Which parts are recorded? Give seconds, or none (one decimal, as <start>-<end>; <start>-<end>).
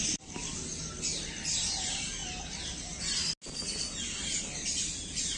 0.0-5.4